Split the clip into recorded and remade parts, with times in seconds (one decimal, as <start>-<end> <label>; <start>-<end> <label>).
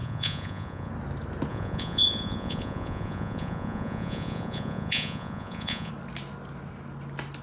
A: 0.0-0.9 remade; 0.9-1.5 recorded; 1.5-5.9 remade; 5.9-7.4 recorded